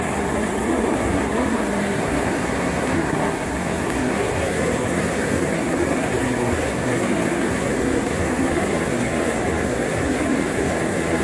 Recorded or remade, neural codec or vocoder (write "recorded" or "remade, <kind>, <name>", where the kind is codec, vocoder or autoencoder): remade, codec, SNAC